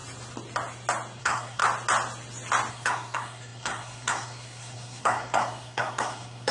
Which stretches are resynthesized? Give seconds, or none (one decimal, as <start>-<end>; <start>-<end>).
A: 1.2-1.6; 2.7-6.5